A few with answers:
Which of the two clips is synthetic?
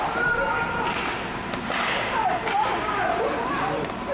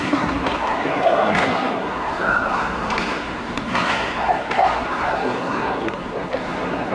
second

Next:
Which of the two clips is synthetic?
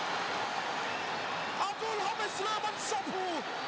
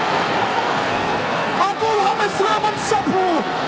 second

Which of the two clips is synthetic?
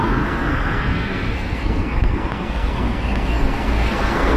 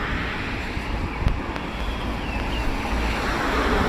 first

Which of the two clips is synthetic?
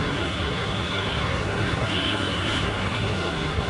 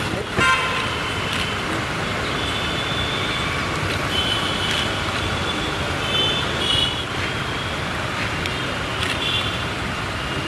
first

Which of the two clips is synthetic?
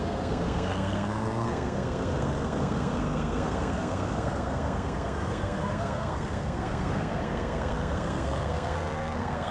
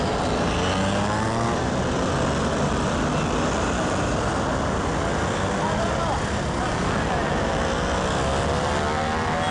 first